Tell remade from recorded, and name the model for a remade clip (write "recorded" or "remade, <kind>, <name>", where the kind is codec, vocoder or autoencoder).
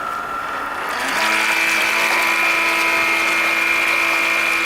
recorded